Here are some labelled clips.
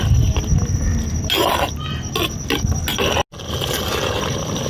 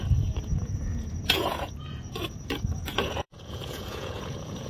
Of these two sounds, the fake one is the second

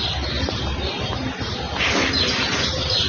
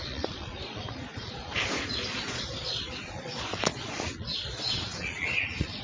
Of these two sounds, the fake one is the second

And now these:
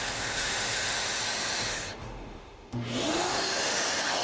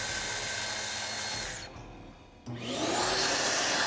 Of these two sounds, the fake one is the first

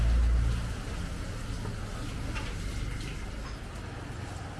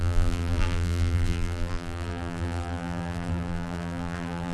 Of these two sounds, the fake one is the second